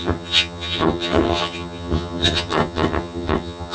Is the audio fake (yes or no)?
yes